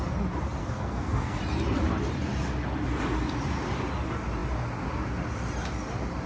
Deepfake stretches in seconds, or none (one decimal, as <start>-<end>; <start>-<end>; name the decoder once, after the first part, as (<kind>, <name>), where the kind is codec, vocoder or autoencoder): 0.6-1.4 (codec, SNAC)